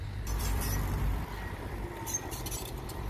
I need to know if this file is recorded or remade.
remade